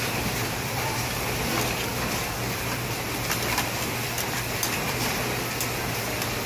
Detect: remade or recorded remade